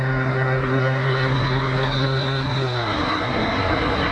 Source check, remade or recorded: remade